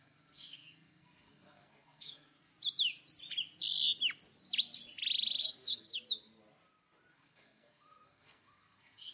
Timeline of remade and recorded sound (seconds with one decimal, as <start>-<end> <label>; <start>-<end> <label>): 0.0-2.5 remade; 2.5-5.4 recorded; 5.4-5.9 remade; 5.9-7.1 recorded; 7.1-9.1 remade